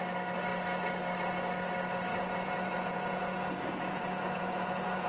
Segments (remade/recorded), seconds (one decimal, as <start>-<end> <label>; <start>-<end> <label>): 0.0-2.1 recorded; 2.1-5.1 remade